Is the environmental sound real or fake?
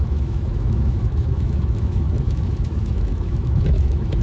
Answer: fake